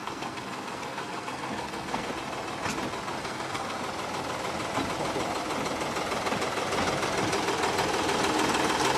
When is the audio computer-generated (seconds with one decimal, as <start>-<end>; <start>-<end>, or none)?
0.0-2.1; 3.2-3.8

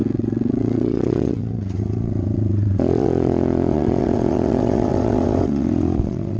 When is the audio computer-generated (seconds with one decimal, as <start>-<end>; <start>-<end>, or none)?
0.0-6.4

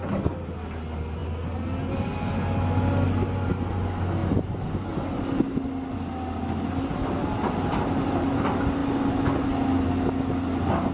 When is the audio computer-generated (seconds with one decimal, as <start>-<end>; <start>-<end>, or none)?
none

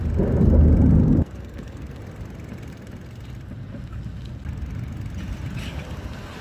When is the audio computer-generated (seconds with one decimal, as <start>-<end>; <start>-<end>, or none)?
1.0-2.0